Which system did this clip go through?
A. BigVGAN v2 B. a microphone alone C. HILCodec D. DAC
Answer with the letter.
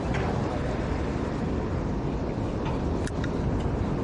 B